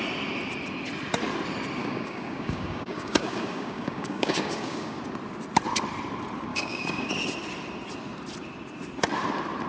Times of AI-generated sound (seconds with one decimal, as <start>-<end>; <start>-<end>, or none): 1.8-5.0; 6.5-7.1